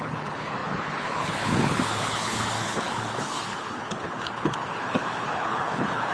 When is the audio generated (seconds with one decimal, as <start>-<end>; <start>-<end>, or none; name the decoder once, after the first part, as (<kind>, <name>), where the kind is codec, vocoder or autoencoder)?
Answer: 0.0-6.1 (codec, HILCodec)